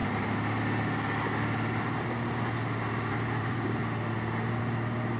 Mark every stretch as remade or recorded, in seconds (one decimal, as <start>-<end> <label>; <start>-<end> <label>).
0.0-3.1 recorded; 3.1-3.8 remade; 3.8-4.6 recorded; 4.6-5.2 remade